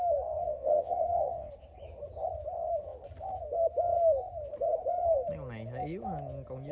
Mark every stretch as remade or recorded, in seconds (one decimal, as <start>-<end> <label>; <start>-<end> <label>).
0.0-0.4 recorded; 0.4-1.5 remade; 1.5-6.7 recorded